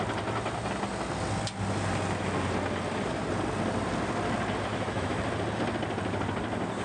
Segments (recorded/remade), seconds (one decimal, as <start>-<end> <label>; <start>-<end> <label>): 0.0-4.7 recorded; 4.7-5.2 remade; 5.2-6.8 recorded